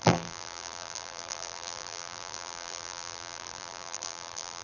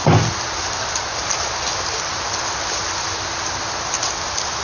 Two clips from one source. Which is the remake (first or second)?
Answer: first